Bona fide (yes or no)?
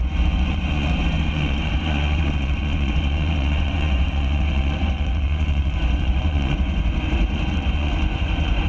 no